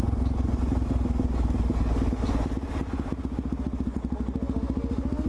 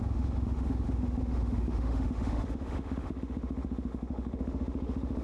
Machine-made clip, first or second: second